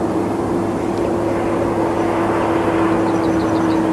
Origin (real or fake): real